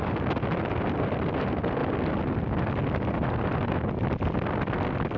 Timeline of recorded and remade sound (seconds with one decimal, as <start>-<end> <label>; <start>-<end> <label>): 0.0-5.2 recorded